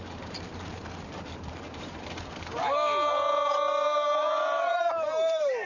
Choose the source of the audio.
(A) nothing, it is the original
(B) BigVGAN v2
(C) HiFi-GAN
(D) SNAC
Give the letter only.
B